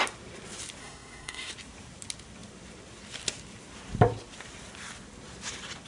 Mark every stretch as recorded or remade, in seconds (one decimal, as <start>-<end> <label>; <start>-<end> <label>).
0.0-0.8 recorded; 0.8-1.5 remade; 1.5-5.9 recorded